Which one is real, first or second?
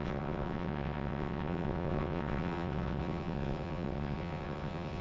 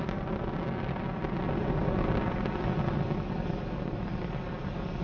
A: second